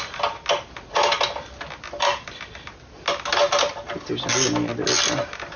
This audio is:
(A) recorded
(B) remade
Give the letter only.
A